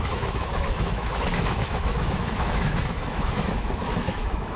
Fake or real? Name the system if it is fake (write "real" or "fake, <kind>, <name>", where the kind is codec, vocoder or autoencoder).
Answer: fake, autoencoder, DAC-VAE